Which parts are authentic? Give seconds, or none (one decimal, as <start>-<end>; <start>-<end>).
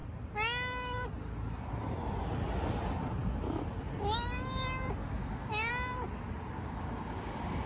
0.0-5.0; 5.7-6.6